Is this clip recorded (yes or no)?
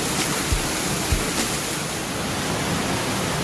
yes